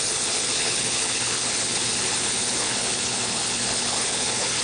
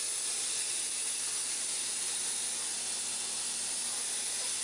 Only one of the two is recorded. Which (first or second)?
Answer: second